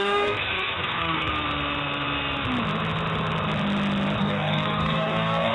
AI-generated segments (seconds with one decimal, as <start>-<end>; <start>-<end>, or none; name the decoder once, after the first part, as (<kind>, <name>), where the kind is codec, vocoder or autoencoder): 0.0-1.3 (codec, DAC); 4.2-5.5